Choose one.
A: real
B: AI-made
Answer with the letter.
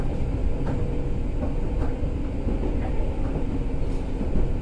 A